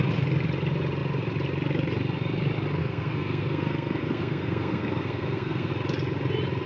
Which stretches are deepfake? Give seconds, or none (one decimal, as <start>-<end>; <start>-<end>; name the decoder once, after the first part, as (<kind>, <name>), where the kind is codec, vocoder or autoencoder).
2.8-5.7 (codec, SNAC)